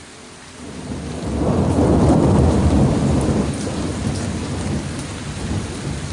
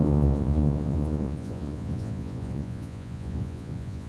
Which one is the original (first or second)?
first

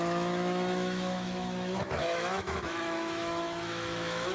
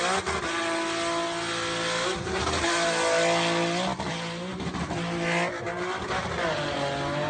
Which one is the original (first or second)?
second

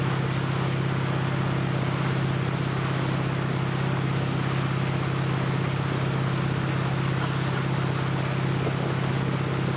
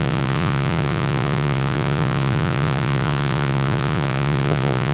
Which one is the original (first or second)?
first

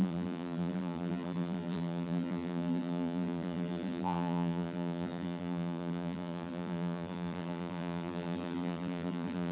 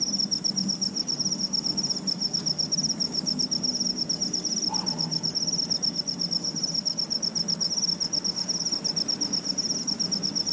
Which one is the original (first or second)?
second